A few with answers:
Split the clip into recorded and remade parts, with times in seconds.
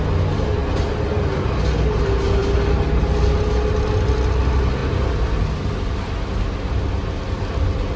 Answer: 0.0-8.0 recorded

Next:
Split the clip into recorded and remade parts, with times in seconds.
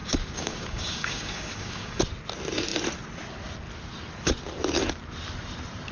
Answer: 0.0-2.0 remade; 2.0-5.9 recorded